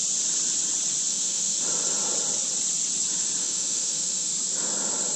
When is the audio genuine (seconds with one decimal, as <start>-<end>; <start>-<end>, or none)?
0.0-1.1; 1.6-3.4; 4.3-5.2